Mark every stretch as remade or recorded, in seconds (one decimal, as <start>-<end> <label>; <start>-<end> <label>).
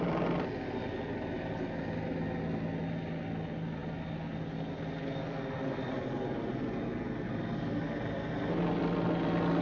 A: 0.0-9.6 recorded